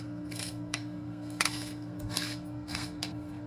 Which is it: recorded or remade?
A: remade